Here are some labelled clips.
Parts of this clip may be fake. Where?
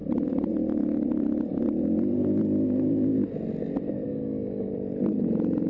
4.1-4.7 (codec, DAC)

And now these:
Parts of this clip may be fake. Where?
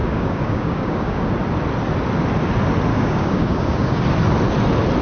0.0-1.3 (codec, DAC); 2.9-4.0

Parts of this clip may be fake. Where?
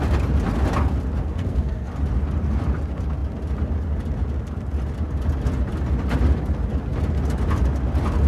1.2-1.9 (codec, SNAC)